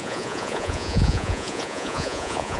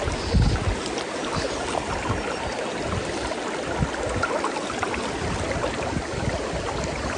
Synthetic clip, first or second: first